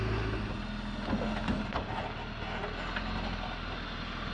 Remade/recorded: recorded